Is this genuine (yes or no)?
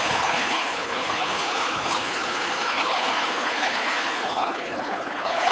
no